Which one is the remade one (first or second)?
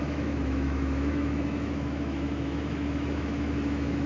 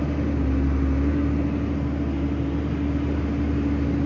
first